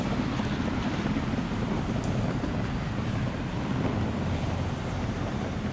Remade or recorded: recorded